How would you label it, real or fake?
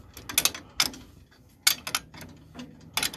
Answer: real